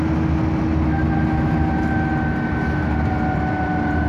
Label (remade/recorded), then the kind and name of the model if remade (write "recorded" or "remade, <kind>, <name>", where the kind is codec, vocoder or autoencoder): recorded